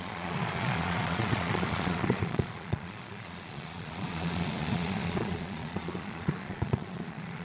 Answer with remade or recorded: remade